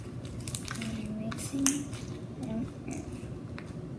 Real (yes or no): yes